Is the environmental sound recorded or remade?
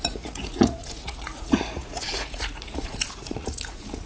remade